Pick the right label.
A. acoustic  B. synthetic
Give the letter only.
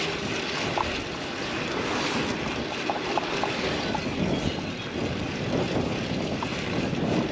A